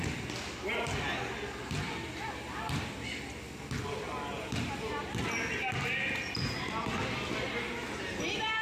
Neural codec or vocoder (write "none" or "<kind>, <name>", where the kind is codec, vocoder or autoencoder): none